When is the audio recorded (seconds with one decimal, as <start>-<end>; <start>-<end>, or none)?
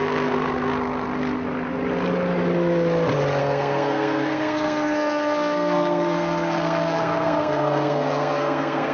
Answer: 0.7-3.4